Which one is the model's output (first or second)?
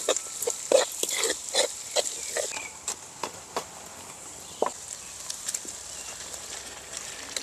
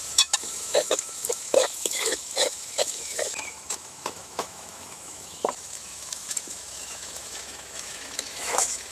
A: second